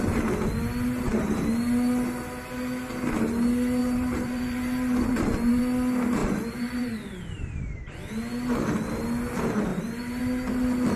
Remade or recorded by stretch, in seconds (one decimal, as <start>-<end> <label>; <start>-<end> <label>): 0.0-3.8 recorded; 3.8-5.6 remade; 5.6-6.2 recorded; 6.2-6.8 remade; 6.8-9.7 recorded; 9.7-10.2 remade; 10.2-11.0 recorded